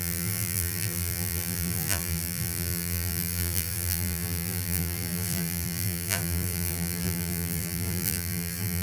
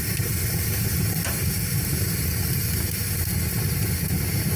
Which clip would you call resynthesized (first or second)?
first